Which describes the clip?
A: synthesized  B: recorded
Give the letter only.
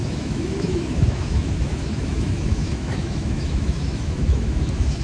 A